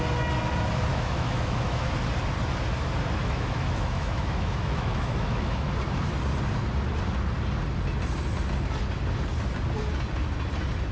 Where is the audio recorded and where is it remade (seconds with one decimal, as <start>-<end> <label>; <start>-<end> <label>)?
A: 0.0-0.9 recorded; 0.9-1.9 remade; 1.9-3.2 recorded; 3.2-5.7 remade; 5.7-10.9 recorded